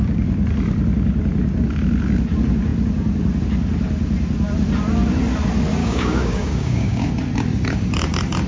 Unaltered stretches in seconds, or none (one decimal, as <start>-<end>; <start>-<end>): 0.0-5.8; 7.1-8.5